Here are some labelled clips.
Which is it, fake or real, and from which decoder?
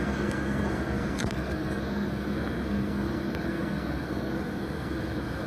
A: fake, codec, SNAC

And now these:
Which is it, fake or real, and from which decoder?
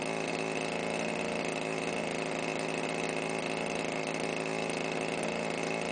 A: real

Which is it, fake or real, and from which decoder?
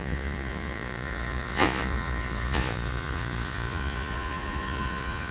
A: fake, vocoder, Vocos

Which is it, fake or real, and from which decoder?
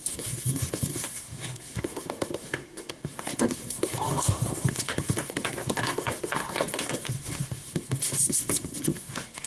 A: fake, codec, SNAC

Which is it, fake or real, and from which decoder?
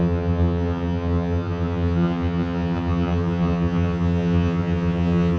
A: fake, vocoder, HiFi-GAN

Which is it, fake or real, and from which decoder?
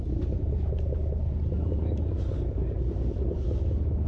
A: real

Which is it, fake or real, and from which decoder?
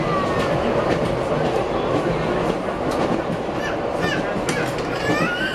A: real